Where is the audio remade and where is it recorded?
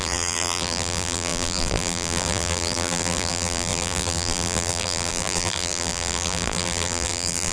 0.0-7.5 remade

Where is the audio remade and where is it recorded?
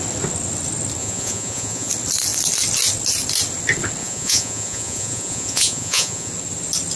0.0-1.0 recorded; 1.0-1.9 remade; 1.9-4.0 recorded; 4.0-6.3 remade; 6.3-7.0 recorded